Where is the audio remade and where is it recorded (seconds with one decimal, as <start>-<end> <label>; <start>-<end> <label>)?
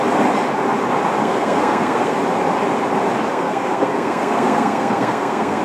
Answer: 0.0-1.2 recorded; 1.2-2.2 remade; 2.2-3.3 recorded; 3.3-5.6 remade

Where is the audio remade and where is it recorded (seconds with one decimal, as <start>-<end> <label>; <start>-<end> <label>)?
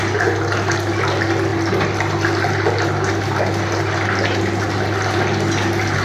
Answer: 0.0-6.0 recorded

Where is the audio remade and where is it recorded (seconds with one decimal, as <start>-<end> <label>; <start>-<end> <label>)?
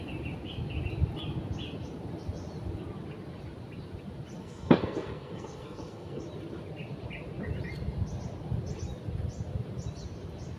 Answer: 0.0-4.4 recorded; 4.4-6.2 remade; 6.2-10.6 recorded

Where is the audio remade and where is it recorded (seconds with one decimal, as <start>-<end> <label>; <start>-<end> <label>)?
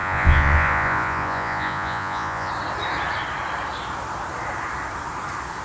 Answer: 0.0-2.5 remade; 2.5-5.6 recorded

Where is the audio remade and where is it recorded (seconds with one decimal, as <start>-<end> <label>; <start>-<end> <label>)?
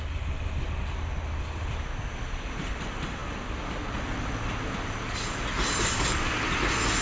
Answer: 0.0-7.0 recorded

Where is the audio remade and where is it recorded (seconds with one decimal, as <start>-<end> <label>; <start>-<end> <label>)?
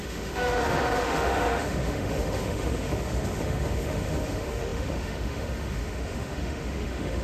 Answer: 0.0-7.2 remade